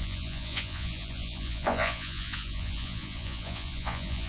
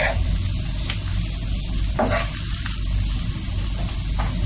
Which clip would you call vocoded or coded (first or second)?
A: first